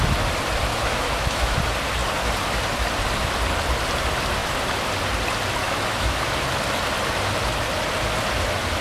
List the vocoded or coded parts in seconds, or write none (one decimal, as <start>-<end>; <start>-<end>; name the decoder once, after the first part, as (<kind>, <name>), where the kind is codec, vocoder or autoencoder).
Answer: 0.7-1.6 (autoencoder, DAC-VAE); 5.6-6.3

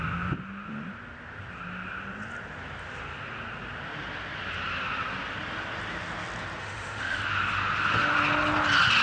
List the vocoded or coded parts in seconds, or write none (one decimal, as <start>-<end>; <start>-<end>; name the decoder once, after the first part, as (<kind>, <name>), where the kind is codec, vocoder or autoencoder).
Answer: 6.6-7.2 (autoencoder, DAC-VAE)

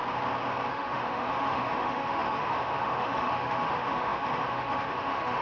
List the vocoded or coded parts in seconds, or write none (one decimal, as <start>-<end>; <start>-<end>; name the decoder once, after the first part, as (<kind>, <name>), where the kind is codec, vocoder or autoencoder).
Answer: 0.7-5.4 (autoencoder, DAC-VAE)

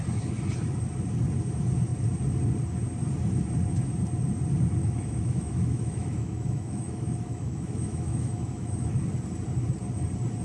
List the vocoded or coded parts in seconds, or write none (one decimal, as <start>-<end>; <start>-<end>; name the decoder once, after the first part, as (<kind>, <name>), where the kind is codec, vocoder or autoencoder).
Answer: 4.8-9.0 (autoencoder, DAC-VAE)